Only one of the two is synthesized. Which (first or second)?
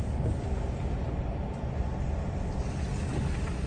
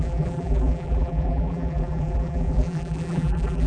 second